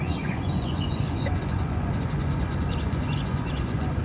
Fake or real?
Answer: fake